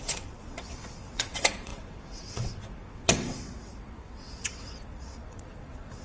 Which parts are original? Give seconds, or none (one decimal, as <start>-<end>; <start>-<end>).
none